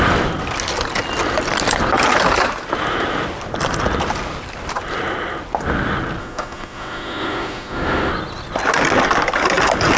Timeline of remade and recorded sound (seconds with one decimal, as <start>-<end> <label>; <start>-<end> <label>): 0.0-6.2 recorded; 6.2-8.1 remade; 8.1-10.0 recorded